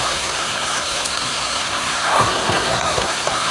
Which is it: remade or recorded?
remade